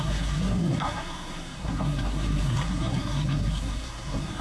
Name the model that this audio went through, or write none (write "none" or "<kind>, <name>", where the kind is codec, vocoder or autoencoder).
codec, SNAC